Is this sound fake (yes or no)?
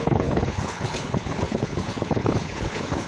yes